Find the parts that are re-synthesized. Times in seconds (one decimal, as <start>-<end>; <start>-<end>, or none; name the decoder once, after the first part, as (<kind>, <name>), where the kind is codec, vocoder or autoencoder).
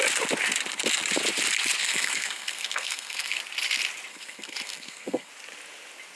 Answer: 1.8-3.4 (codec, SNAC); 4.1-5.3